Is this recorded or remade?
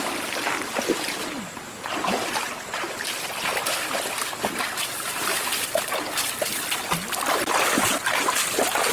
recorded